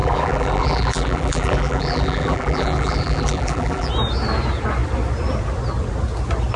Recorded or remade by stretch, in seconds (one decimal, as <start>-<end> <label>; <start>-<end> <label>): 0.0-3.9 remade; 3.9-6.6 recorded